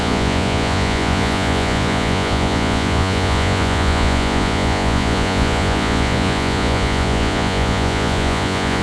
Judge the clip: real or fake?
fake